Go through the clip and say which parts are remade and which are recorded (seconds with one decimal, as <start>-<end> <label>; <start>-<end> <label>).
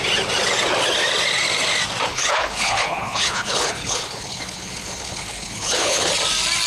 0.0-2.1 recorded; 2.1-6.1 remade; 6.1-6.7 recorded